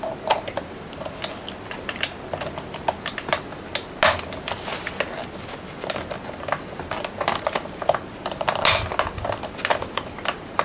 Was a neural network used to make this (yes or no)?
no